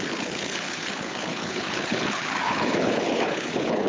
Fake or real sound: fake